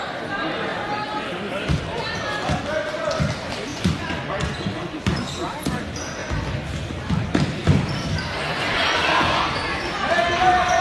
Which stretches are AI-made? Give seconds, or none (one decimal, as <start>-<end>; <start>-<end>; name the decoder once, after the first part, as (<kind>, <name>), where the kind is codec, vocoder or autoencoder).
3.7-5.2 (vocoder, Vocos); 8.5-9.5